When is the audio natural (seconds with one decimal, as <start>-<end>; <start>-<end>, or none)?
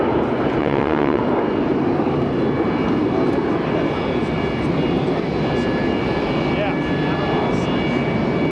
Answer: 0.0-0.6; 1.2-8.5